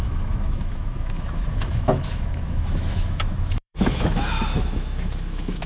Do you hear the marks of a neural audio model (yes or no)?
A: yes